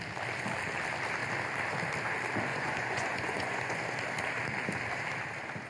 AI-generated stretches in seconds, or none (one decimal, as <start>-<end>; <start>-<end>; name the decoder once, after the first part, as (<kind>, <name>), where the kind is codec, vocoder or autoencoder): 2.5-3.8 (vocoder, Vocos)